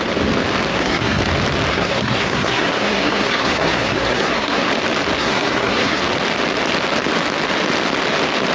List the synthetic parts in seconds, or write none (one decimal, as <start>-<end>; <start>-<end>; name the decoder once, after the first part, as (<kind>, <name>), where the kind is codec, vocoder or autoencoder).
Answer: 0.7-1.2 (codec, SNAC); 1.7-4.7; 5.2-6.0

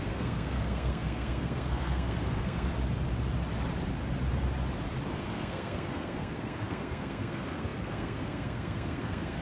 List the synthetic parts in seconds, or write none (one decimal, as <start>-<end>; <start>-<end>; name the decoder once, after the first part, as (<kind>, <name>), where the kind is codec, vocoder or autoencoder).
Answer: 0.0-2.7 (codec, SNAC); 5.2-9.4

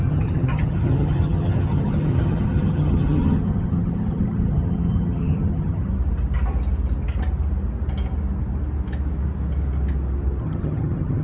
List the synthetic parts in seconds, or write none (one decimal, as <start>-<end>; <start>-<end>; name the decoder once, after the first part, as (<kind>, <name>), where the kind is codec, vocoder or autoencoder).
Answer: 0.0-5.9 (vocoder, HiFi-GAN); 10.4-11.2